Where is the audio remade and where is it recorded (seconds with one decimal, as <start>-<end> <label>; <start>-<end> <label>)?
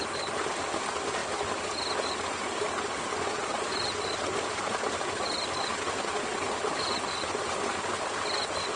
0.0-8.8 recorded